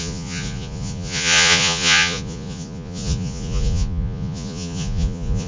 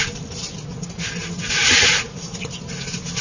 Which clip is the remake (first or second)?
first